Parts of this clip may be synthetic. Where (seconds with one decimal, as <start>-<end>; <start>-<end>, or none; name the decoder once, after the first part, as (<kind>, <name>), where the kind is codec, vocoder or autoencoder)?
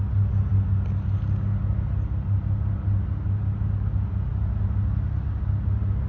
none